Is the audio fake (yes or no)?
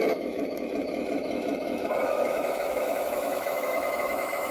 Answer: yes